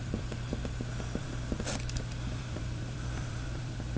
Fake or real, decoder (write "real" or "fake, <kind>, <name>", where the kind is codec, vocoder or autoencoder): fake, vocoder, BigVGAN v2